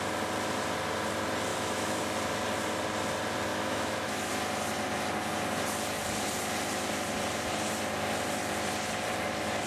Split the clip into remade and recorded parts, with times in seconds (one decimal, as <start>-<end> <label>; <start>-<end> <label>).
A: 0.0-1.5 recorded; 1.5-2.0 remade; 2.0-3.5 recorded; 3.5-4.3 remade; 4.3-9.7 recorded